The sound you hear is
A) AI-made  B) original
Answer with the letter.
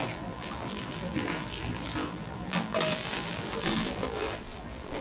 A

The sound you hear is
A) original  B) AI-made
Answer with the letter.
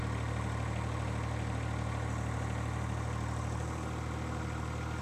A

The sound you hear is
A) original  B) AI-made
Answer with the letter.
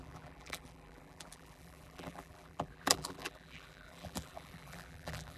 B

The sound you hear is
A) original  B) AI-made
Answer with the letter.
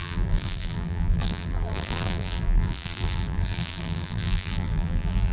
B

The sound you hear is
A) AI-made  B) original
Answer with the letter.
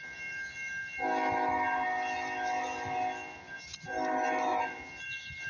B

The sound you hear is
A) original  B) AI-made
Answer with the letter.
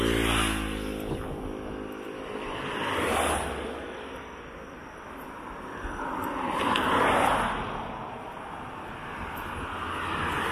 A